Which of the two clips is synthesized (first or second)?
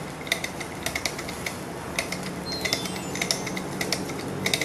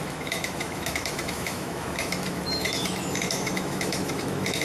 second